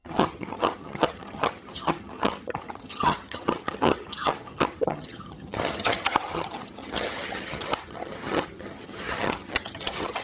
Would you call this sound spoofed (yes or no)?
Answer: yes